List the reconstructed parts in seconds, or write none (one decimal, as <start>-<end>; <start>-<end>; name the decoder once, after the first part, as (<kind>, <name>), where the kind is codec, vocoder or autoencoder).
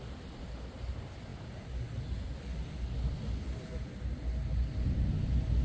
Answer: none